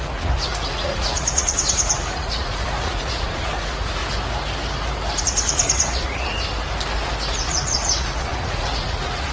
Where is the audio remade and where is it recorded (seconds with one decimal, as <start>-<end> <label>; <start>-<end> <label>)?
0.0-4.0 remade; 4.0-5.2 recorded; 5.2-6.3 remade; 6.3-7.3 recorded; 7.3-9.3 remade